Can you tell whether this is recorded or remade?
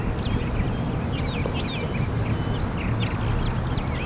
recorded